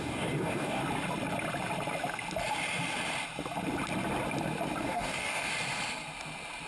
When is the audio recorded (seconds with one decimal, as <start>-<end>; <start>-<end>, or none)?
0.8-4.8; 5.5-6.7